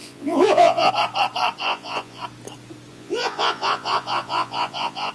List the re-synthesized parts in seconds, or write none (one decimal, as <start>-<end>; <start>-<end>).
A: 0.0-0.9; 1.6-2.2; 2.9-5.1